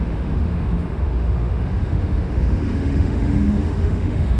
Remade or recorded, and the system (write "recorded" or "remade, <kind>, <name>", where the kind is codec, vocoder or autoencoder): remade, autoencoder, DAC-VAE